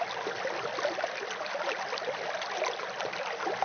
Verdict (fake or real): real